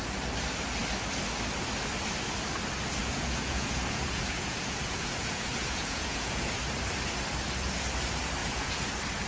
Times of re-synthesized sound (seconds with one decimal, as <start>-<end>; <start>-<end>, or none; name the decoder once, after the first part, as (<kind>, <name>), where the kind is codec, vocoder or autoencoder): 3.0-6.5 (vocoder, Vocos); 8.4-8.9